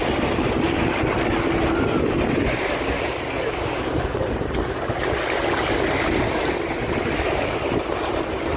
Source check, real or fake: real